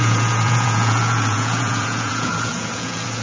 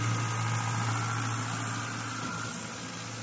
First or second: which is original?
second